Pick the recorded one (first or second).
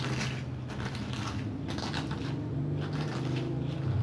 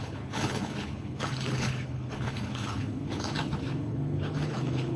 first